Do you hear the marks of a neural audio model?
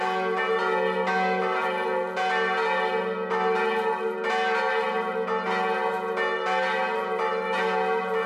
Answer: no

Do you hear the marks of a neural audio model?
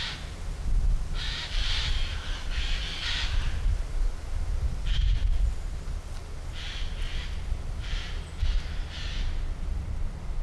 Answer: no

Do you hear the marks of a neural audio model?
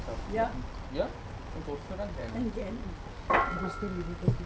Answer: no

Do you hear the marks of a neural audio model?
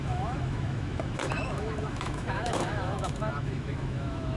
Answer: yes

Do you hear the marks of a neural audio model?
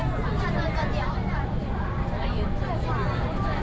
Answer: no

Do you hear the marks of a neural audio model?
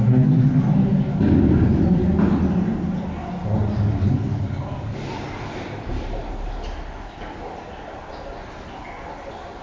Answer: no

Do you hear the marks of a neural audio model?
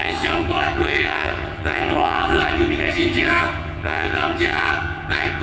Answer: yes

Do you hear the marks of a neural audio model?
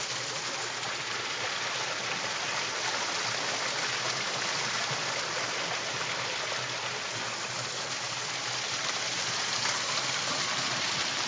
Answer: no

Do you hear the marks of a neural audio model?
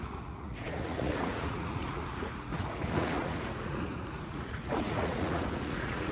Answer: yes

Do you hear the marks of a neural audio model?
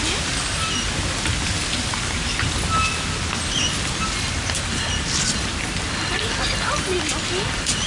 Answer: no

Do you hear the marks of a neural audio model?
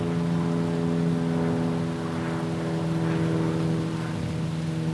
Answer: no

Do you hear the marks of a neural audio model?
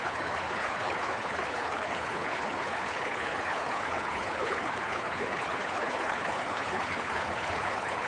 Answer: yes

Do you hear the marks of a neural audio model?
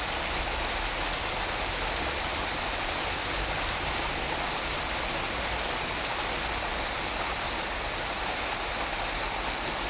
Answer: no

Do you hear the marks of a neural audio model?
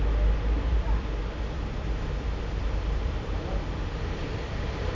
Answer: yes